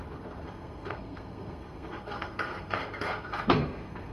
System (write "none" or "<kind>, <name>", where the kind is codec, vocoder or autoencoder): codec, SNAC